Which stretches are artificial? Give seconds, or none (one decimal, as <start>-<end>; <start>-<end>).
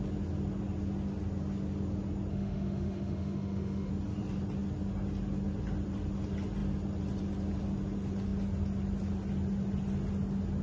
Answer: 2.3-3.9